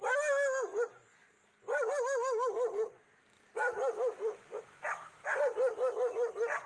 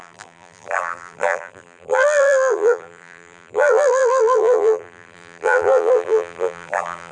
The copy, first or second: second